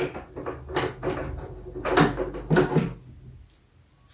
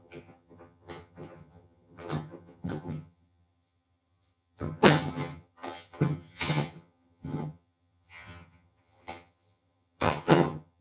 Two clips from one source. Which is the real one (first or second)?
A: first